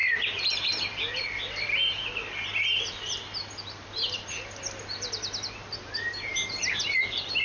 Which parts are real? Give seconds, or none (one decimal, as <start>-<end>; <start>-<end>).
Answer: 6.3-7.4